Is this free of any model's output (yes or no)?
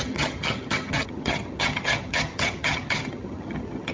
no